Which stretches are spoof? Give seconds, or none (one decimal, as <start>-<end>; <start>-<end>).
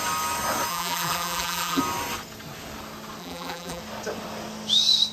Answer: 0.7-1.8; 3.2-3.8